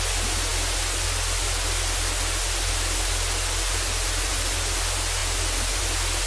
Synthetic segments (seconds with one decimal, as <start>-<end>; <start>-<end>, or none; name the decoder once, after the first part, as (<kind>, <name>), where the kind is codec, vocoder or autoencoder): none